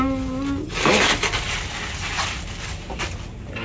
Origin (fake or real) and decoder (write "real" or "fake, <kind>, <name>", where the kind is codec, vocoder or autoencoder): real